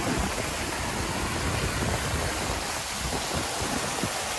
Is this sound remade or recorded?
recorded